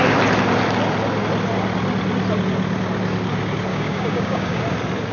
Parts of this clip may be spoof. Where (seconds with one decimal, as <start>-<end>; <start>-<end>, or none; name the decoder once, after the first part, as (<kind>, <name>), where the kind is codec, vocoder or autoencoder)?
3.7-4.6 (codec, DAC)